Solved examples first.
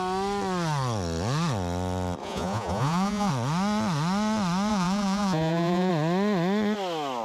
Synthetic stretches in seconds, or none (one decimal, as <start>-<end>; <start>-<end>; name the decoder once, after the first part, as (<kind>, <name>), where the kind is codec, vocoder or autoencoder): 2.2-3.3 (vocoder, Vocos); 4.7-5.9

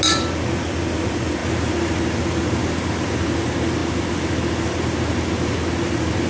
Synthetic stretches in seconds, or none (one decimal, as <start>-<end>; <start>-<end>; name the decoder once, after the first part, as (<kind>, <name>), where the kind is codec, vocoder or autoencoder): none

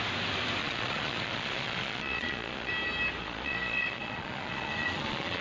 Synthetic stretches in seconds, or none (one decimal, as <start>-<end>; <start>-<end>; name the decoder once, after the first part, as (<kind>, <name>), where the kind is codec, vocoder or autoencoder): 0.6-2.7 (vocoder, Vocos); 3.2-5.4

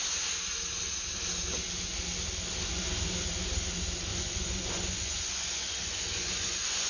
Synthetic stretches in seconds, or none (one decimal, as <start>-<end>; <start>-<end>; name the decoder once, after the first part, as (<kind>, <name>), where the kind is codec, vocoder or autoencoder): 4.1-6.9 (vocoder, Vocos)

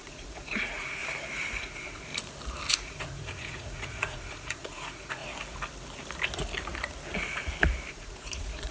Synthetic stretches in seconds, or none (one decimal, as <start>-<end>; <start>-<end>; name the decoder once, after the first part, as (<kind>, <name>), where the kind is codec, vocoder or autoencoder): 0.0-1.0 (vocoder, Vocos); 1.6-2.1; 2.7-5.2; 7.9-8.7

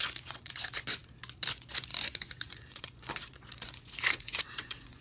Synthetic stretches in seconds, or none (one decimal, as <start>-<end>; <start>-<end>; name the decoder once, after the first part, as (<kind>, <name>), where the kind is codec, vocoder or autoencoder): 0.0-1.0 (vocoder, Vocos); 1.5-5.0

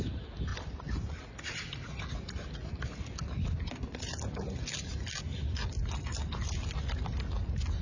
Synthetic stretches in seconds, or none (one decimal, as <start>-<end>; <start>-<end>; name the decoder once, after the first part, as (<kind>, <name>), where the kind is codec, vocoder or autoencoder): none

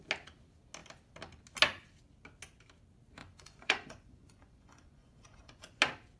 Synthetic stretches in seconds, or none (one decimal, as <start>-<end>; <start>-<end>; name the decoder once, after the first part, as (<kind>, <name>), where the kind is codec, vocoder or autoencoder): 3.2-5.8 (vocoder, Vocos)